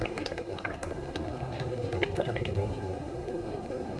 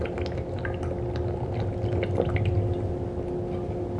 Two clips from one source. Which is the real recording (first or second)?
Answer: second